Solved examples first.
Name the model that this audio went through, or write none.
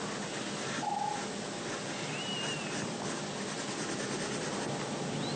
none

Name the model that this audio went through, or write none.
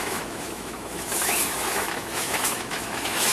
autoencoder, DAC-VAE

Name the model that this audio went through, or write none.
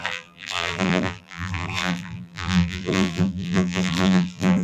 vocoder, BigVGAN v2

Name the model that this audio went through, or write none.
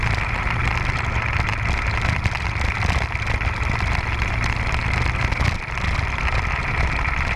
none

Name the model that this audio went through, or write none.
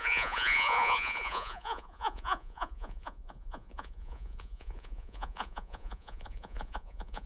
vocoder, Vocos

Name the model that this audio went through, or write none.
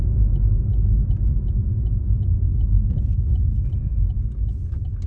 none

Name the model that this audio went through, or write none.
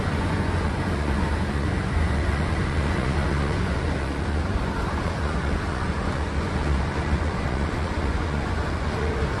vocoder, Vocos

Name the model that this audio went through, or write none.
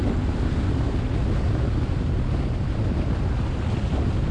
none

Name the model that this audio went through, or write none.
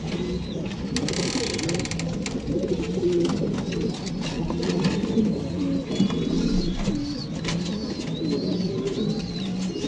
none